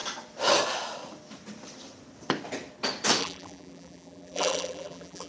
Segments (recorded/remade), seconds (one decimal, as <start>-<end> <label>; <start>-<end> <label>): 0.0-3.2 recorded; 3.2-5.3 remade

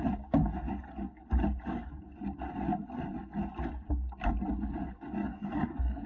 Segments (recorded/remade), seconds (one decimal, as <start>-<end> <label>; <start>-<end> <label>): 0.0-5.2 recorded; 5.2-6.1 remade

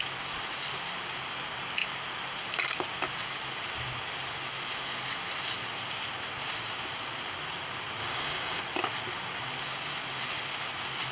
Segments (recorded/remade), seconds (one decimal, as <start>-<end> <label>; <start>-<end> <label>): 0.0-8.0 recorded; 8.0-8.6 remade; 8.6-11.1 recorded

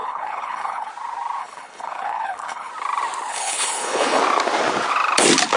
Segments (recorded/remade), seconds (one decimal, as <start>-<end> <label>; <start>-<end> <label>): 0.0-0.9 remade; 0.9-1.4 recorded; 1.4-2.7 remade; 2.7-3.3 recorded; 3.3-4.2 remade; 4.2-5.6 recorded

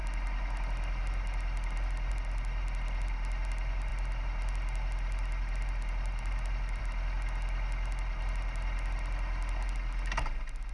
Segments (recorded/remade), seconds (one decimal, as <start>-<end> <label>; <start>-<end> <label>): 0.0-10.7 recorded

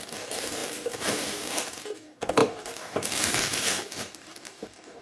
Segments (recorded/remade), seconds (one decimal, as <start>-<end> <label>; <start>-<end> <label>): 0.0-5.0 remade

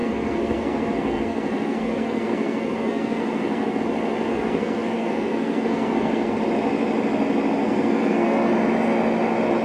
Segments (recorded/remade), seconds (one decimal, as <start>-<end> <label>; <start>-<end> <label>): 0.0-3.8 remade; 3.8-4.3 recorded; 4.3-6.4 remade; 6.4-7.6 recorded; 7.6-8.5 remade; 8.5-9.6 recorded